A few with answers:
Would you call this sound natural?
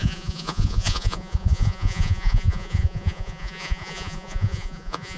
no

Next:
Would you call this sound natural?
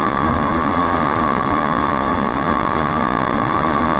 no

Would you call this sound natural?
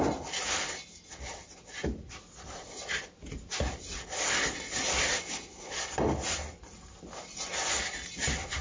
yes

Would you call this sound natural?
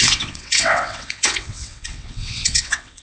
no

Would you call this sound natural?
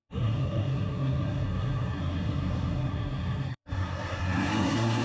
no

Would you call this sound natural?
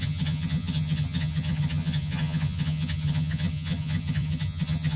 no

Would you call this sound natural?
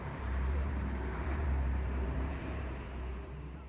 no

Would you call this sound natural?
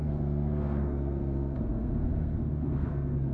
no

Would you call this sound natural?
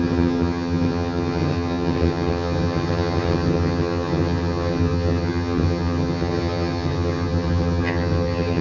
no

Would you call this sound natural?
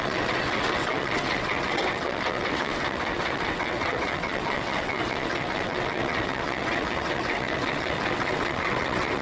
no